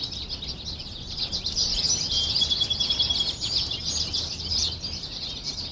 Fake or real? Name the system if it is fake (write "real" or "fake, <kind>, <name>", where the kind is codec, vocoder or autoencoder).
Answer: real